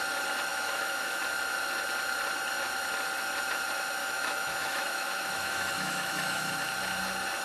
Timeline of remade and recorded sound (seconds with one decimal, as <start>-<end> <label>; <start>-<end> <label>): 0.0-0.5 recorded; 0.5-1.2 remade; 1.2-4.0 recorded; 4.0-6.5 remade; 6.5-7.4 recorded